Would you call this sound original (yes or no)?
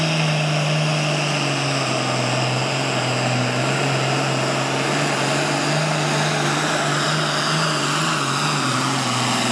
yes